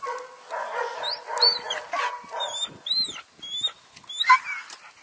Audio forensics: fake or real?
real